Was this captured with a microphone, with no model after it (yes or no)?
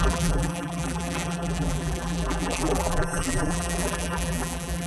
no